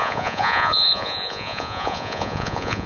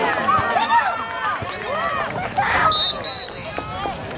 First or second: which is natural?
second